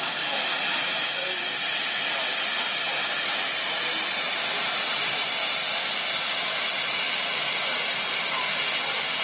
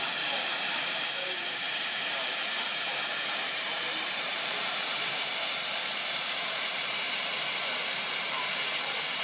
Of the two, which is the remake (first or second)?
second